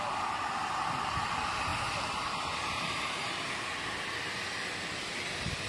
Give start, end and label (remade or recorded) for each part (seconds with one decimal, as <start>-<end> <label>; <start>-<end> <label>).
0.0-1.7 recorded; 1.7-3.0 remade; 3.0-5.7 recorded